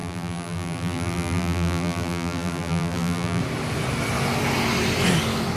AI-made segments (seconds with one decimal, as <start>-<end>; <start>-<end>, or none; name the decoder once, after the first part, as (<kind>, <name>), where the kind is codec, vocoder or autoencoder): 0.0-3.4 (vocoder, BigVGAN v2)